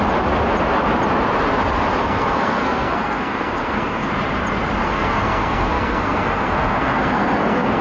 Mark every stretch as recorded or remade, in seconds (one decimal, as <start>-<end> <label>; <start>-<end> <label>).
0.0-2.0 recorded; 2.0-4.1 remade; 4.1-4.8 recorded; 4.8-7.8 remade